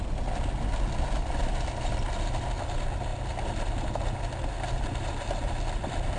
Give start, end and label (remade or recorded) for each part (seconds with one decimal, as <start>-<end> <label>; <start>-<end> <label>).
0.0-6.2 recorded